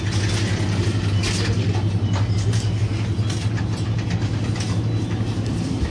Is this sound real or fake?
real